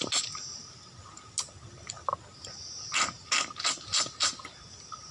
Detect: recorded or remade recorded